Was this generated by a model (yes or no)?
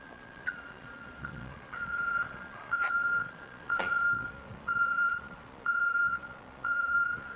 yes